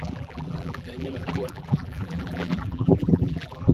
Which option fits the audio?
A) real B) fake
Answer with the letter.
B